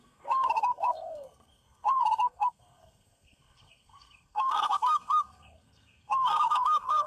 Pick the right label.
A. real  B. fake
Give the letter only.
B